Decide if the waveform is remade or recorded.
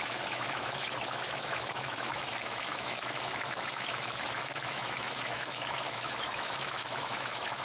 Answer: remade